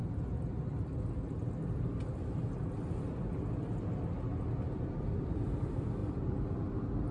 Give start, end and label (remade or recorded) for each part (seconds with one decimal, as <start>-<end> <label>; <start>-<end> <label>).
0.0-7.1 recorded